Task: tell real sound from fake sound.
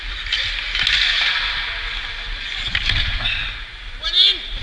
real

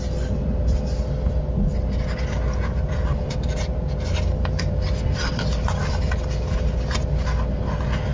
real